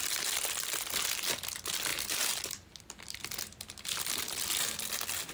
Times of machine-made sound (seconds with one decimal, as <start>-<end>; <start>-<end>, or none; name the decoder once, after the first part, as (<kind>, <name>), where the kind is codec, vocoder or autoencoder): none